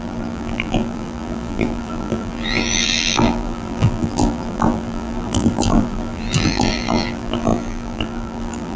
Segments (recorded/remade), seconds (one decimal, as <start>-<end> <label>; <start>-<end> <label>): 0.0-8.8 remade